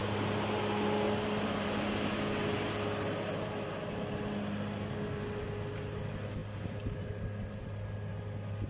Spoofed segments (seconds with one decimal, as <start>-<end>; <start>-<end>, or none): none